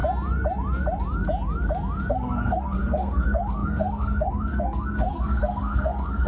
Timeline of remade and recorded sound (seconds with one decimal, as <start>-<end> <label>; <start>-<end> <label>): 0.0-2.1 recorded; 2.1-6.3 remade